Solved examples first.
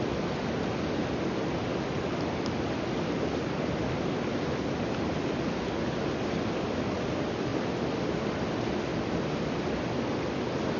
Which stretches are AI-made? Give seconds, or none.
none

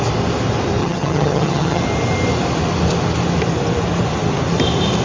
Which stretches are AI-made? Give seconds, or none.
0.8-1.8 (vocoder, HiFi-GAN)